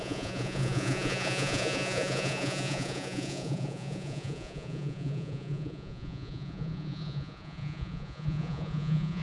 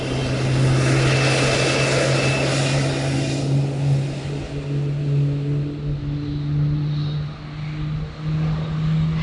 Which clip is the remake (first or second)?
first